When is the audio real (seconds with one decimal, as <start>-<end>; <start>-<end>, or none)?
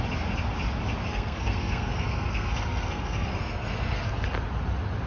0.0-1.1; 4.1-5.1